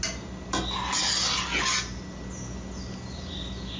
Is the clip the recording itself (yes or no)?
yes